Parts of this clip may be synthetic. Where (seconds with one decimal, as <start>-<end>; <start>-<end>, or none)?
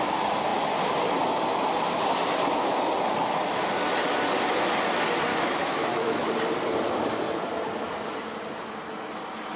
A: 5.3-6.3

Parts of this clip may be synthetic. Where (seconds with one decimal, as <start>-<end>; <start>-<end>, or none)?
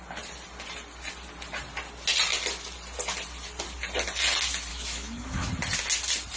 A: 4.7-5.5